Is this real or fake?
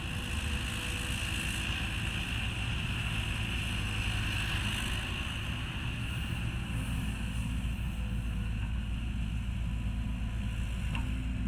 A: real